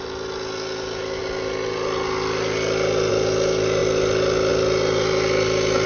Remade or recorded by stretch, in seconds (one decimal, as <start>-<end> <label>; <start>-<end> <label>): 0.0-5.9 recorded